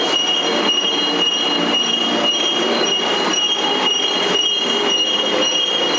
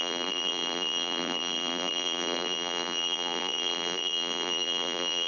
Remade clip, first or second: second